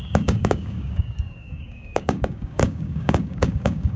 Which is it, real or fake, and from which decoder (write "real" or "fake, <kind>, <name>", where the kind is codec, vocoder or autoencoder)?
fake, codec, DAC